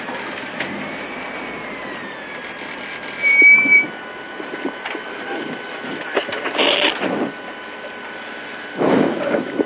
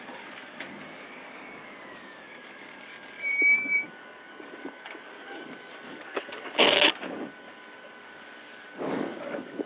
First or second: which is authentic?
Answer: first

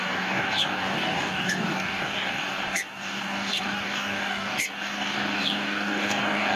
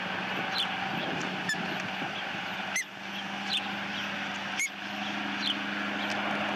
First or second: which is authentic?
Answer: second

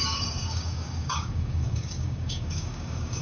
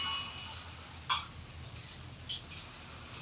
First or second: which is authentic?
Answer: second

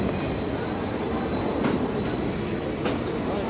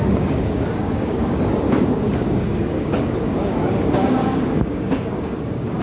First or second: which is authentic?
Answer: first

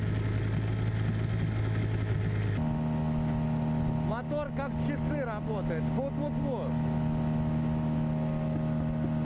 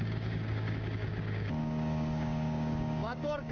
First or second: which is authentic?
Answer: first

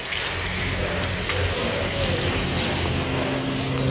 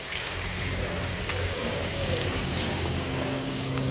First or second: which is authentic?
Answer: first